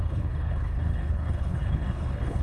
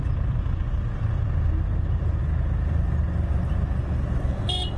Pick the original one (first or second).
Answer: second